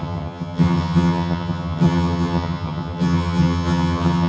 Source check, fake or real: fake